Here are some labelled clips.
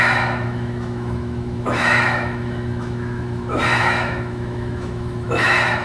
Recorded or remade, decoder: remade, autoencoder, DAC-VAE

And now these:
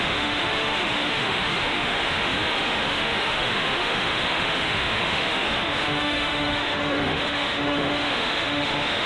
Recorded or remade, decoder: remade, autoencoder, DAC-VAE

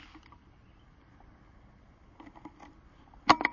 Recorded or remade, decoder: recorded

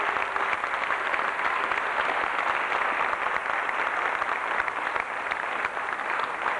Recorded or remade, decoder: recorded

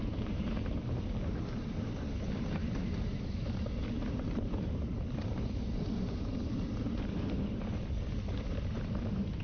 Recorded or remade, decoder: remade, vocoder, BigVGAN v2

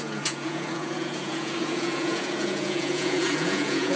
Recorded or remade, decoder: remade, vocoder, Vocos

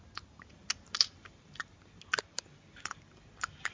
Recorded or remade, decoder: recorded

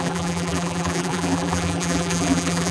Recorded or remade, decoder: remade, vocoder, BigVGAN v2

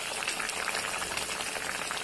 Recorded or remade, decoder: recorded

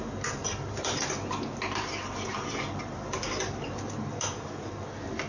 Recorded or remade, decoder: recorded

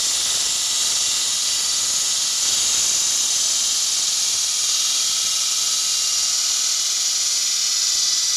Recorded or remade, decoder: recorded